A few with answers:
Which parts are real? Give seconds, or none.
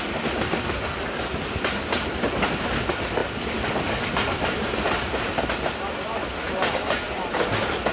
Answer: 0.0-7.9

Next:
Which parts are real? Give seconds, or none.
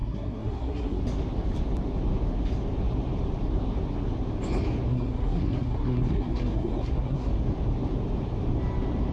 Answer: 1.0-4.9; 7.3-9.1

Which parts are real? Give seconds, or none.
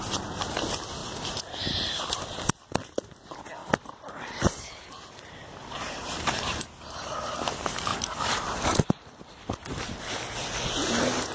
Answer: 0.0-1.0; 2.1-3.6; 6.8-7.9; 9.8-11.3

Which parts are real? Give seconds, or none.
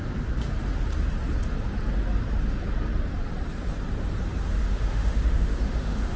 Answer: 0.0-4.6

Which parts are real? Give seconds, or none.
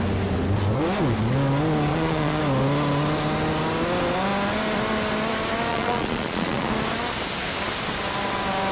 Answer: 0.0-1.9; 2.4-5.7; 6.7-8.7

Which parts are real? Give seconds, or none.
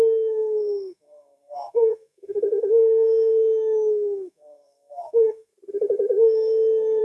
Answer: 5.5-7.0